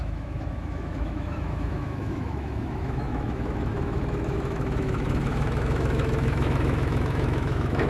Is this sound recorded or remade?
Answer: remade